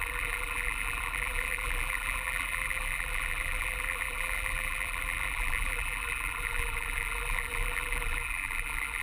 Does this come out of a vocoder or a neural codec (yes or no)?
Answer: yes